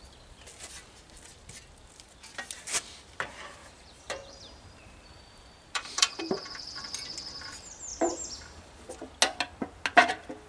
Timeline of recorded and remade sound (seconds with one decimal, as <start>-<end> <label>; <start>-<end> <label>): 0.0-3.6 recorded; 3.6-6.2 remade; 6.2-7.9 recorded; 7.9-8.9 remade; 8.9-10.5 recorded